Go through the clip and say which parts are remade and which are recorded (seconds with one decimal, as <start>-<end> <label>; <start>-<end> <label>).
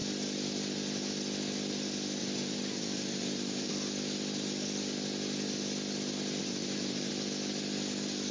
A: 0.0-2.2 recorded; 2.2-3.7 remade; 3.7-6.4 recorded; 6.4-7.1 remade; 7.1-8.3 recorded